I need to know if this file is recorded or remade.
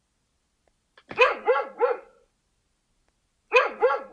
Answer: recorded